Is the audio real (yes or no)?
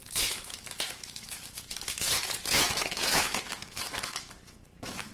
no